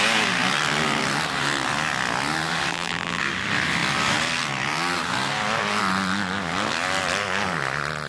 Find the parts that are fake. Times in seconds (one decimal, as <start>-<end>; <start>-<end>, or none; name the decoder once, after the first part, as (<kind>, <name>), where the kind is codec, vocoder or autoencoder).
2.7-3.2 (vocoder, BigVGAN v2)